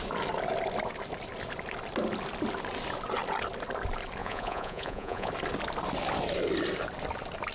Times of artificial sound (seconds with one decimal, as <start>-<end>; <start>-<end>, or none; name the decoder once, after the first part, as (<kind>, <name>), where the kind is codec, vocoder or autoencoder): 4.2-5.3 (vocoder, Vocos)